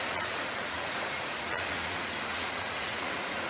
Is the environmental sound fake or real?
fake